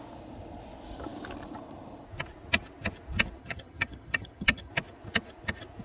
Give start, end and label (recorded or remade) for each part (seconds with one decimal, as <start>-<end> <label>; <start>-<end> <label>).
0.0-3.4 recorded; 3.4-4.7 remade; 4.7-5.8 recorded